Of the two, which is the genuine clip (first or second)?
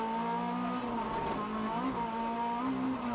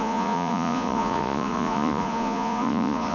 first